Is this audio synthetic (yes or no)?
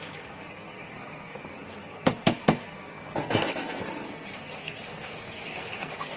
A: yes